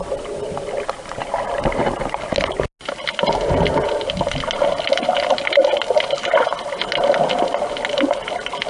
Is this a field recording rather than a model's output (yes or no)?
yes